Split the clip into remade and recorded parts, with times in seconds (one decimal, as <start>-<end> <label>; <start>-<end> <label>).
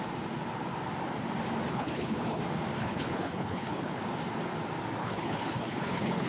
0.0-1.7 recorded; 1.7-2.4 remade; 2.4-2.8 recorded; 2.8-4.0 remade; 4.0-5.0 recorded; 5.0-6.3 remade